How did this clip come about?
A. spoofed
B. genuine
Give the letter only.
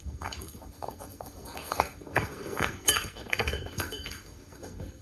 A